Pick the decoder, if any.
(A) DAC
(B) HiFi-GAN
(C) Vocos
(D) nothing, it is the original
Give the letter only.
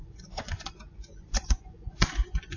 C